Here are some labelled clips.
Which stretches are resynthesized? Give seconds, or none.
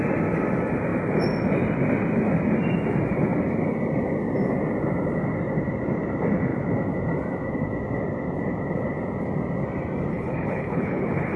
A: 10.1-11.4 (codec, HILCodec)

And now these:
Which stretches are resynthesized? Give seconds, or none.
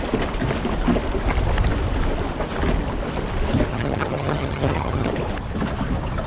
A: 3.7-5.1 (vocoder, HiFi-GAN)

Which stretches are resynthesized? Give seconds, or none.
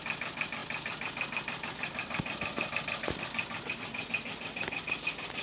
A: 0.6-3.8 (vocoder, BigVGAN v2)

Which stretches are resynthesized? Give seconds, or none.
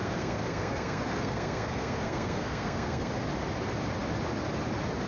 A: 0.0-3.1 (codec, SNAC)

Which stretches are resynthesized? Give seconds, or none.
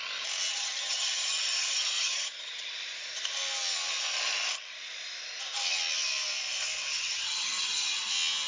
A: 0.5-2.7 (vocoder, HiFi-GAN); 6.9-8.1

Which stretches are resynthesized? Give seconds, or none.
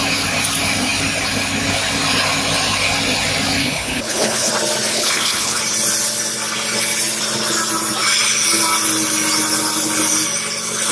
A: 3.6-4.5 (codec, HILCodec); 4.9-5.6